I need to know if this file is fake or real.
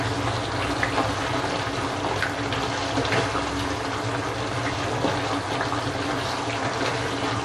real